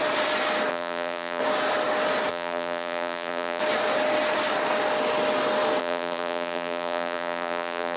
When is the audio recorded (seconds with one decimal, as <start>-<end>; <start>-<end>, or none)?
0.0-0.7; 1.4-2.3; 3.6-5.8